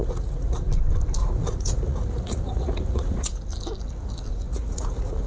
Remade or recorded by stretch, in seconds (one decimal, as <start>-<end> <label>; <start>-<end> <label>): 0.0-0.7 remade; 0.7-1.2 recorded; 1.2-3.4 remade; 3.4-4.3 recorded; 4.3-5.3 remade